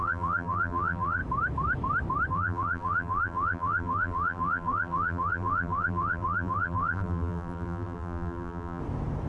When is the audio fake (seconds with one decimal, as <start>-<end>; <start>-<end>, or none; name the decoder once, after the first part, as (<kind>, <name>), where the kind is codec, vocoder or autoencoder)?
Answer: 0.0-1.2 (vocoder, BigVGAN v2); 2.3-8.8